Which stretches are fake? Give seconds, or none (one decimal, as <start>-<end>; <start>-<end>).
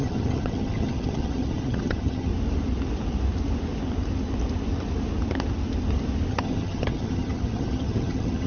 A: 0.0-2.3; 6.3-8.5